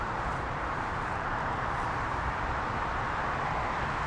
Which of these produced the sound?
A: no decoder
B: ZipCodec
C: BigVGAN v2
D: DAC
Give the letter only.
C